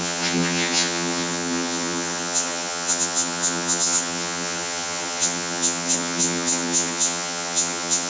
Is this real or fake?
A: fake